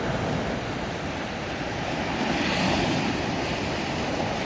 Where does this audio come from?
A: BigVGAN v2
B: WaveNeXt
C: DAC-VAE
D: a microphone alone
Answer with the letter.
D